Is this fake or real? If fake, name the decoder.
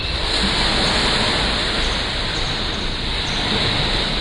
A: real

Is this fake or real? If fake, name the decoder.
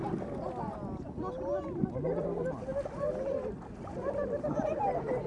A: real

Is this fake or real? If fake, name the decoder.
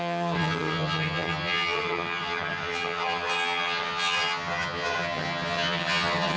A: fake, vocoder, HiFi-GAN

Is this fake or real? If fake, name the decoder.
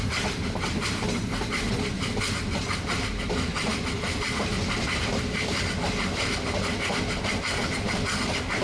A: real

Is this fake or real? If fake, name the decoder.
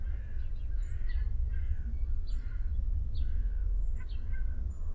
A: real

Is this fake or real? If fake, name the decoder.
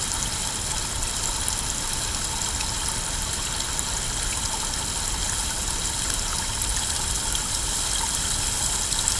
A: real